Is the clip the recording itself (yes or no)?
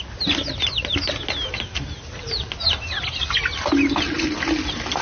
yes